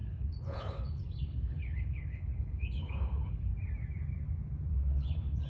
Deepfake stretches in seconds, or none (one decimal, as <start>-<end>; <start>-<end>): 0.0-3.5; 4.7-5.5